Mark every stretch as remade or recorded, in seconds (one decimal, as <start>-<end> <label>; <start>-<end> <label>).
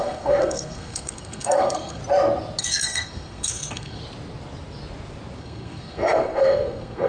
0.0-2.0 remade; 2.0-2.6 recorded; 2.6-4.0 remade; 4.0-5.4 recorded; 5.4-7.1 remade